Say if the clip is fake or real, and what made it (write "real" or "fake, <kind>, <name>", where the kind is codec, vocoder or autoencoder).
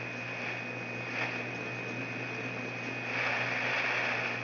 real